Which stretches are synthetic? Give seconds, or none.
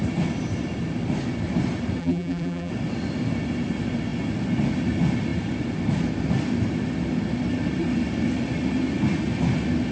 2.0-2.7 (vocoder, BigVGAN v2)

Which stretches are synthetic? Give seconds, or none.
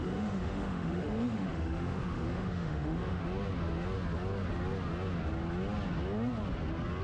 0.0-3.2 (autoencoder, DAC-VAE)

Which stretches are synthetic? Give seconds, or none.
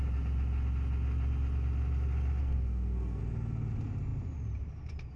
2.4-3.2 (codec, SNAC)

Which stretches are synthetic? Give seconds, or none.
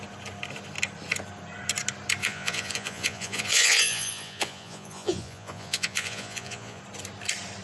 2.2-6.8 (vocoder, Vocos)